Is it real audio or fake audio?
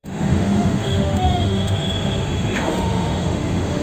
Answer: fake